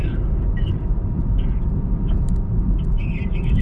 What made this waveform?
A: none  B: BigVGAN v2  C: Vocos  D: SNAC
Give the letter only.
A